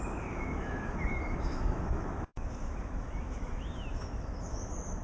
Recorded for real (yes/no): no